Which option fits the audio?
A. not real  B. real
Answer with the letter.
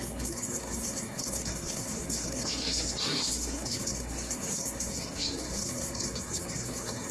A